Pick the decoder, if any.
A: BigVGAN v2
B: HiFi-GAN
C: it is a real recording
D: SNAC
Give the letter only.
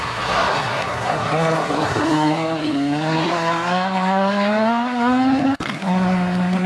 D